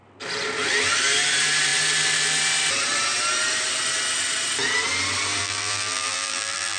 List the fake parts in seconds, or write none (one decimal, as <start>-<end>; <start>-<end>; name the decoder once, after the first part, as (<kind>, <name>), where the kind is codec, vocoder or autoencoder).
5.4-6.8 (vocoder, BigVGAN v2)